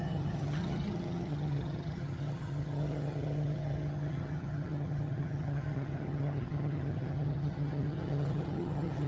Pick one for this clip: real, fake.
fake